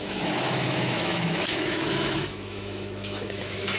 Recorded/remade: remade